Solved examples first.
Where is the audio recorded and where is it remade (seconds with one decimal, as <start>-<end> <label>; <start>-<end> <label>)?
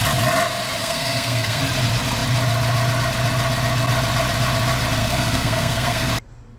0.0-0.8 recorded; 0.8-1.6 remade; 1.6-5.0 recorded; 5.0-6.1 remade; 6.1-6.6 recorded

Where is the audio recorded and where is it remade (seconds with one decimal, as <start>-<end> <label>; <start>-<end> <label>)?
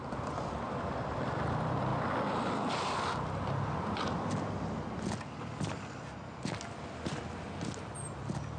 0.0-8.6 recorded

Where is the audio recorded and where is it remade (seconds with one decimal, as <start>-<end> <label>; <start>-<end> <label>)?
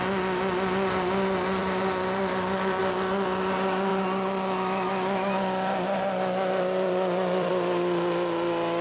0.0-1.6 recorded; 1.6-2.8 remade; 2.8-3.9 recorded; 3.9-7.5 remade; 7.5-8.8 recorded